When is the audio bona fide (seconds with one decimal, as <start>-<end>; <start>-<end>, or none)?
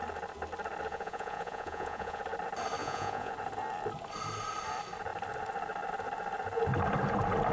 0.0-0.9; 2.2-2.8; 3.3-7.5